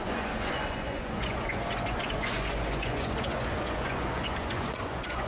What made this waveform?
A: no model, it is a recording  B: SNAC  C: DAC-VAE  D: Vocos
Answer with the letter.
D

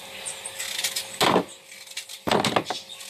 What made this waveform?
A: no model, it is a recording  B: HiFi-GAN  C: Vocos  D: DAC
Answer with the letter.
A